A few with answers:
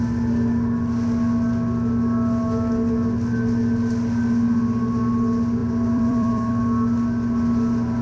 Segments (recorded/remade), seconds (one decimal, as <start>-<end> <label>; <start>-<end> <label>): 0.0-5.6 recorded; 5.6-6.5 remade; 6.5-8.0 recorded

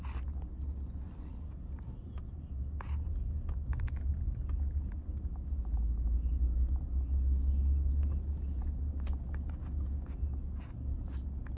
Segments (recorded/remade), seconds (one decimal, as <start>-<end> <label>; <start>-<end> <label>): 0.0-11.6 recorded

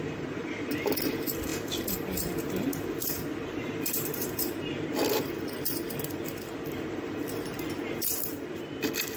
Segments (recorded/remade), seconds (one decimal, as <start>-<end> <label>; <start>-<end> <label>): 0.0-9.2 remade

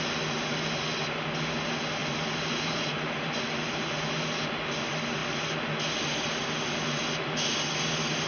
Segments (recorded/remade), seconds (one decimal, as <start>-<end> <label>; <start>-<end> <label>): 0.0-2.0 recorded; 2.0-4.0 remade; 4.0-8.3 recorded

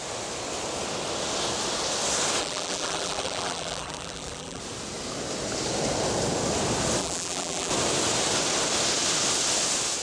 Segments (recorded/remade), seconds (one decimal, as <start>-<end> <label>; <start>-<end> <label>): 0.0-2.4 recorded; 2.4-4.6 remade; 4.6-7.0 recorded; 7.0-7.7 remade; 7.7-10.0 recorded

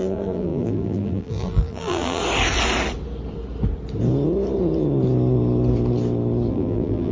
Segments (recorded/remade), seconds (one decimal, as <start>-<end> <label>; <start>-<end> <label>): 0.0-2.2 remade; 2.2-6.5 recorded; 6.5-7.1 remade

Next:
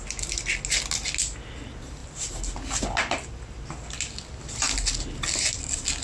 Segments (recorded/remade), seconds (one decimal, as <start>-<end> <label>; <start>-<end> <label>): 0.0-6.0 recorded

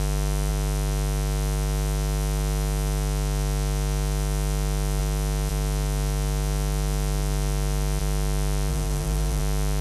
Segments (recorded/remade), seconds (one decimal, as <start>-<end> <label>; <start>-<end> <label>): 0.0-8.7 recorded; 8.7-9.4 remade; 9.4-9.8 recorded